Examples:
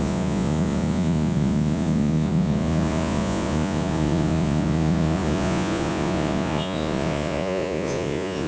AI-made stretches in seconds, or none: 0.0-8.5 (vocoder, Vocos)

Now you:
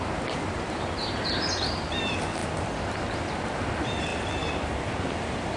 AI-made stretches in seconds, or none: none